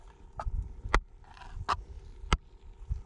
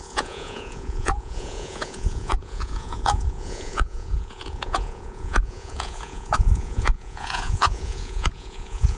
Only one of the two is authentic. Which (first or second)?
first